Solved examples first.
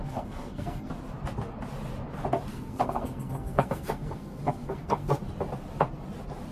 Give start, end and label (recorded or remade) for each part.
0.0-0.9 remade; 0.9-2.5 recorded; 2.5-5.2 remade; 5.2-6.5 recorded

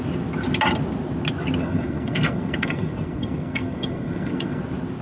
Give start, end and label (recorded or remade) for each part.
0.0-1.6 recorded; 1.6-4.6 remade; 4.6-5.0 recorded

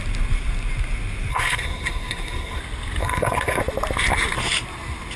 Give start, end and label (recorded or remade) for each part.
0.0-1.3 recorded; 1.3-2.6 remade; 2.6-3.0 recorded; 3.0-3.6 remade; 3.6-5.2 recorded

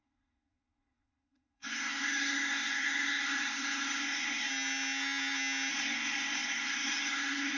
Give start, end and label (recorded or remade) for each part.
0.0-4.5 remade; 4.5-5.7 recorded; 5.7-7.6 remade

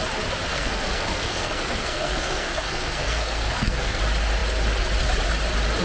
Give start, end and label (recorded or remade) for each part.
0.0-0.5 recorded; 0.5-4.0 remade; 4.0-5.8 recorded

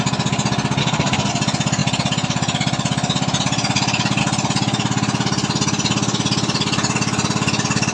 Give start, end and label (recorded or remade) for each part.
0.0-0.8 recorded; 0.8-1.3 remade; 1.3-7.9 recorded

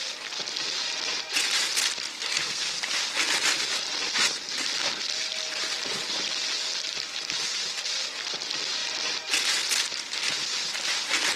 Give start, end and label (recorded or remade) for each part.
0.0-2.1 recorded; 2.1-2.9 remade; 2.9-11.4 recorded

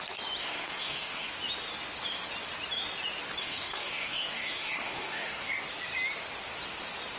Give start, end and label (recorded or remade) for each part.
0.0-0.4 recorded; 0.4-1.3 remade; 1.3-3.4 recorded; 3.4-5.5 remade; 5.5-7.2 recorded